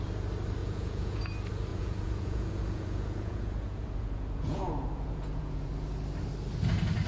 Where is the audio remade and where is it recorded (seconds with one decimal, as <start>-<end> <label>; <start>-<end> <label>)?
0.0-0.6 recorded; 0.6-1.2 remade; 1.2-1.7 recorded; 1.7-5.7 remade; 5.7-7.1 recorded